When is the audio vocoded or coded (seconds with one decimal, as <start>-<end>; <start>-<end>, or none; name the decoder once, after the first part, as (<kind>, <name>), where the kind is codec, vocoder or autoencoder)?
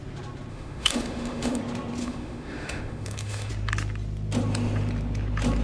0.5-1.6 (autoencoder, DAC-VAE); 2.0-3.5